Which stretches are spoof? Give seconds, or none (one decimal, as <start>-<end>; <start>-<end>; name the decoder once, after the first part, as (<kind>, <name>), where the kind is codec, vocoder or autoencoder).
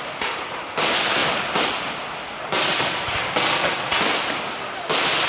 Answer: none